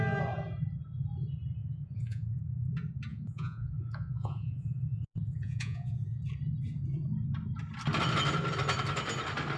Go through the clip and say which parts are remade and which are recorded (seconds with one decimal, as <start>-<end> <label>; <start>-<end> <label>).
0.0-1.6 recorded; 1.6-2.4 remade; 2.4-3.1 recorded; 3.1-6.2 remade; 6.2-9.6 recorded